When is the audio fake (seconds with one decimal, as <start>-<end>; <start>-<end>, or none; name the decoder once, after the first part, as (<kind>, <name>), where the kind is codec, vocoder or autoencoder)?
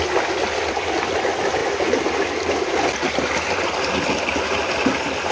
none